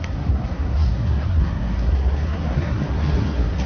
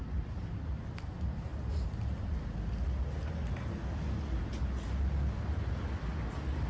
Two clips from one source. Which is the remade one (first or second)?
first